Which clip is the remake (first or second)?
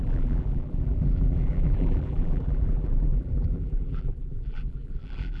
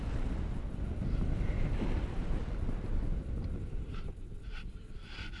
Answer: first